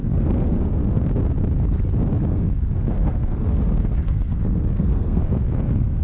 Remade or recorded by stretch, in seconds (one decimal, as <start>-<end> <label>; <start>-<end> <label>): 0.0-1.1 remade; 1.1-2.3 recorded; 2.3-6.0 remade

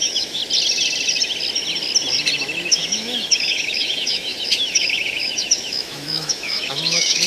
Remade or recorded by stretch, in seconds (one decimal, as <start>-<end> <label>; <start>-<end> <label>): 0.0-0.4 remade; 0.4-2.7 recorded; 2.7-7.3 remade

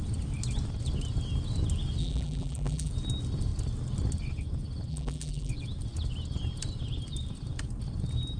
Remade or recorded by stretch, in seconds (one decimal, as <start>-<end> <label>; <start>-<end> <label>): 0.0-2.0 recorded; 2.0-2.9 remade; 2.9-4.9 recorded; 4.9-5.5 remade; 5.5-8.4 recorded

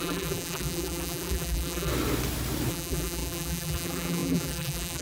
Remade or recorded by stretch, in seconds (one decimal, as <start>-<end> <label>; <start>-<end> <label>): 0.0-1.9 remade; 1.9-2.7 recorded; 2.7-5.0 remade

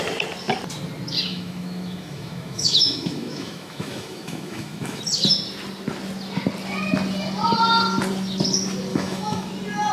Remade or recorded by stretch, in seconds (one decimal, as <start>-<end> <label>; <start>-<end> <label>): 0.0-1.3 recorded; 1.3-5.0 remade; 5.0-8.9 recorded; 8.9-9.5 remade; 9.5-9.9 recorded

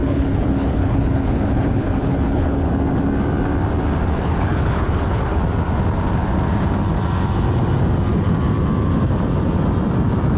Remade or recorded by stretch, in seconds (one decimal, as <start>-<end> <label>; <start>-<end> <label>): 0.0-2.7 remade; 2.7-4.0 recorded; 4.0-5.4 remade; 5.4-10.4 recorded